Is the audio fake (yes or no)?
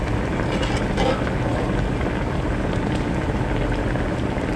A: no